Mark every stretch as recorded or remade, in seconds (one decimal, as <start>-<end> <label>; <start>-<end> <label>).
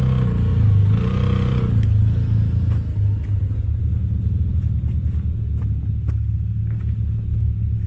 0.0-4.5 recorded; 4.5-5.6 remade; 5.6-7.9 recorded